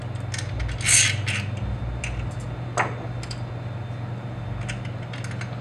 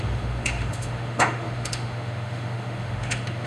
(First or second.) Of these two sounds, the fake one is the second